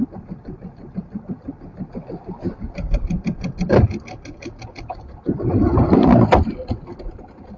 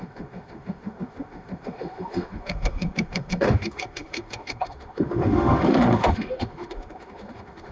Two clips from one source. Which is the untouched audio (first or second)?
first